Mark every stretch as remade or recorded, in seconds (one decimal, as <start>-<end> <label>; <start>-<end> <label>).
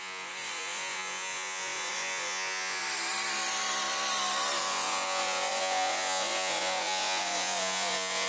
0.0-2.8 remade; 2.8-4.6 recorded; 4.6-8.3 remade